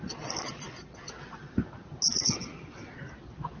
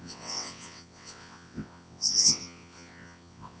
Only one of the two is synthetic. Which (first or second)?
second